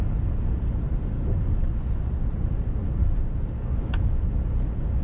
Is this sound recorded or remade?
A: remade